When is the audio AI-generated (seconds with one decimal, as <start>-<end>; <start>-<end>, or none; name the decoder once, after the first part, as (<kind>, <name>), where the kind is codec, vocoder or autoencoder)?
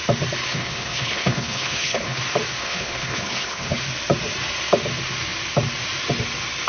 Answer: 0.5-2.2 (codec, HILCodec); 2.6-3.8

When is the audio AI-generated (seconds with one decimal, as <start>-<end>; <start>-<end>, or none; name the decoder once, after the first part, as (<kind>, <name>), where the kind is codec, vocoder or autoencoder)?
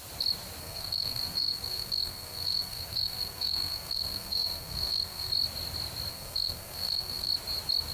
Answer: 0.6-5.3 (codec, SNAC); 6.1-7.3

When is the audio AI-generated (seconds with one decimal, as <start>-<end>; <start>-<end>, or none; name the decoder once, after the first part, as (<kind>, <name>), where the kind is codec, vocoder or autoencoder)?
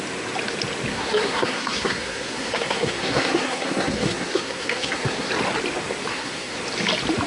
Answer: 0.9-5.3 (codec, SNAC); 6.1-6.6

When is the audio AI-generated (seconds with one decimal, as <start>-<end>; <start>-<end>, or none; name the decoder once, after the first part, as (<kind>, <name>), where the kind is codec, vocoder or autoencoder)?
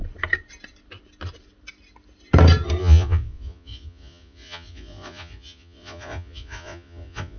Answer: 2.8-7.4 (vocoder, Vocos)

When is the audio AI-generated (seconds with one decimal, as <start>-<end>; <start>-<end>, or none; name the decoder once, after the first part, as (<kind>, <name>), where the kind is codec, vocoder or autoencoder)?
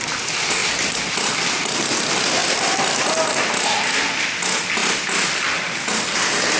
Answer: 0.6-2.0 (vocoder, BigVGAN v2); 4.8-6.6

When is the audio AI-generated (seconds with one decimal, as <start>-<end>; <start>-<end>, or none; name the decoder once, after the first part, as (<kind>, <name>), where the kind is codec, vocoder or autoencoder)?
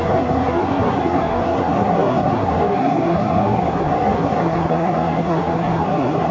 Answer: 0.0-6.3 (codec, SNAC)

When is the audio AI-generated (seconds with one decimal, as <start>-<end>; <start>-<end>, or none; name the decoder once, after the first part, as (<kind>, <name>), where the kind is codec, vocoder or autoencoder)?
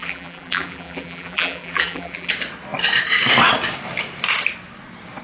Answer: 0.0-2.3 (vocoder, BigVGAN v2)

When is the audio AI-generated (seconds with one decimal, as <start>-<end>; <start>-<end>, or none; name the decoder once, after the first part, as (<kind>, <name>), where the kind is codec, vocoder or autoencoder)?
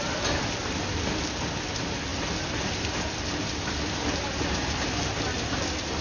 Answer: none